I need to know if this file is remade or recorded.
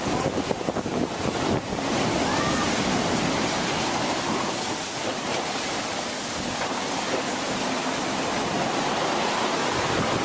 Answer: recorded